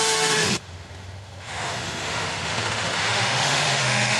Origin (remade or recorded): remade